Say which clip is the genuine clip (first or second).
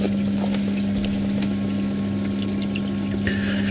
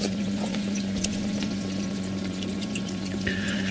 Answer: first